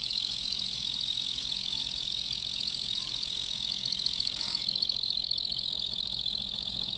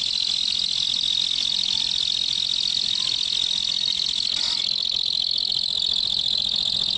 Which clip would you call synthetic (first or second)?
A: first